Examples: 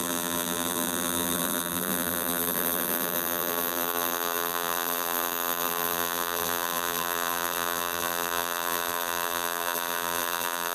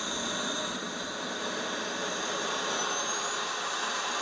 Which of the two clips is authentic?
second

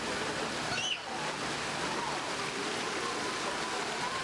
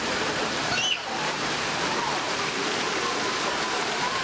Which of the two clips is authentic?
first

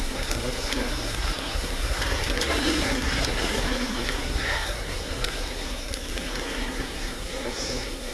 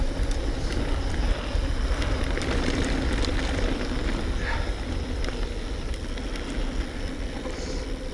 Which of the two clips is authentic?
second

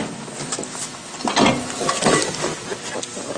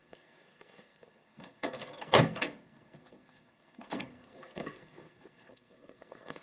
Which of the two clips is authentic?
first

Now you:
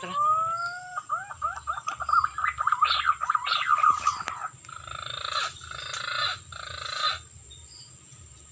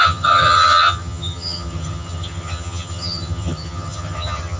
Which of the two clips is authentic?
first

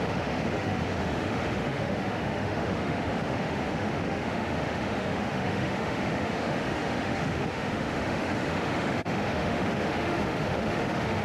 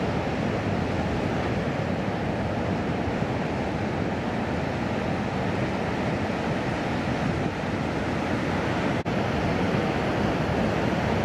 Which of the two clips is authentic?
second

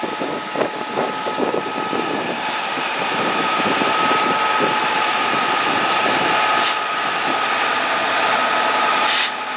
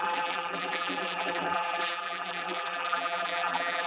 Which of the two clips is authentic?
first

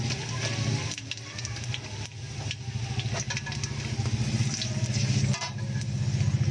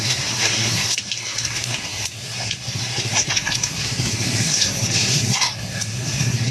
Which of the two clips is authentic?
first